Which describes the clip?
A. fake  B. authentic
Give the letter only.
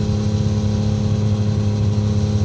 B